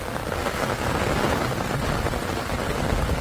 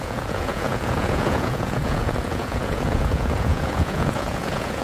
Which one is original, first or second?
first